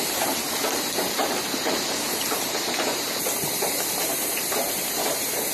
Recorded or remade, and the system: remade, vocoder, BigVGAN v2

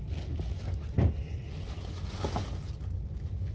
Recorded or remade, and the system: recorded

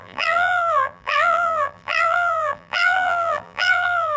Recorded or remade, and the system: remade, vocoder, BigVGAN v2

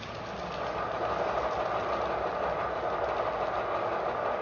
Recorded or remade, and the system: recorded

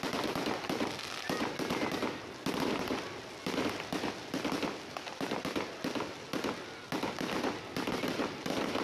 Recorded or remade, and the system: recorded